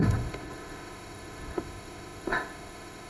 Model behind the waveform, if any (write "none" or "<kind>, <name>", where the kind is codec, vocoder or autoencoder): autoencoder, DAC-VAE